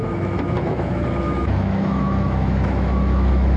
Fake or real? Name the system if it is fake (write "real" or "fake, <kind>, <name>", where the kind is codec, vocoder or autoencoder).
fake, autoencoder, DAC-VAE